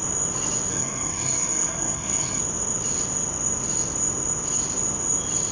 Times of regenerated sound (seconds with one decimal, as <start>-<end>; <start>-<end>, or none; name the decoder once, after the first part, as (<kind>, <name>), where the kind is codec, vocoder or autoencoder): 0.7-2.4 (codec, SNAC)